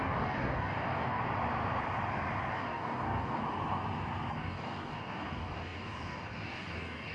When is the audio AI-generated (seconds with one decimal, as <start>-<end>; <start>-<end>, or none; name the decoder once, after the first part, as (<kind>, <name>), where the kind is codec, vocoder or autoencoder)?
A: 0.0-1.2 (codec, DAC); 2.5-3.4; 4.3-7.1